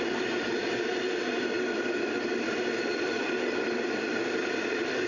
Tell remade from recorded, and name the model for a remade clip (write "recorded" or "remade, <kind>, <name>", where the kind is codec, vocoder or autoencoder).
remade, vocoder, BigVGAN v2